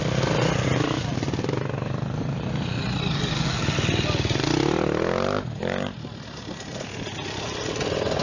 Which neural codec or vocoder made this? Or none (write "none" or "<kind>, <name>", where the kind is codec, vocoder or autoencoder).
none